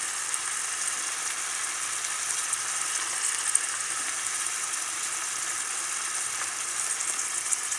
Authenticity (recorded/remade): recorded